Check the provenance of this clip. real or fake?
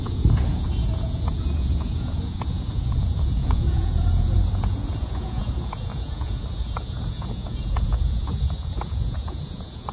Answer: fake